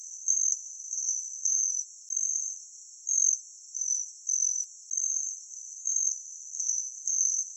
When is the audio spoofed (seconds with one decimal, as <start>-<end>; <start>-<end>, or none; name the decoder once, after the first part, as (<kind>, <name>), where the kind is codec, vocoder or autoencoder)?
0.0-1.7 (codec, SNAC); 5.5-7.6